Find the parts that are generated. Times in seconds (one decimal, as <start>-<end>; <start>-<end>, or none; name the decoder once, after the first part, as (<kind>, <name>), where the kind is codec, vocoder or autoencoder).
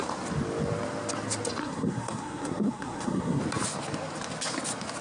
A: 1.6-3.4 (codec, SNAC)